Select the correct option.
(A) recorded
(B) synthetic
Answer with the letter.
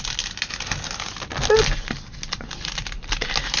A